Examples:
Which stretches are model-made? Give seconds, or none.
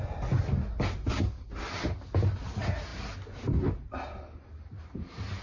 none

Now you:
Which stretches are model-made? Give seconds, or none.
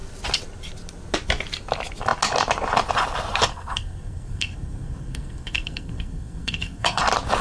3.5-7.0 (codec, SNAC)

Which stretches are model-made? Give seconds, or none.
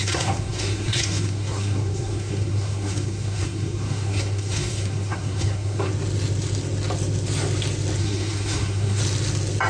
0.0-5.9 (codec, SNAC); 8.0-9.0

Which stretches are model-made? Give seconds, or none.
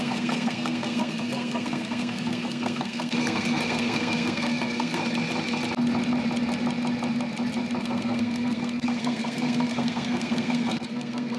0.0-5.0 (codec, SNAC); 7.8-11.4